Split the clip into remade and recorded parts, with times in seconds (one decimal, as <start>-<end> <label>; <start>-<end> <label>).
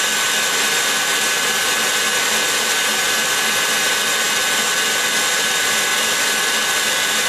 0.0-5.9 recorded; 5.9-6.5 remade; 6.5-7.3 recorded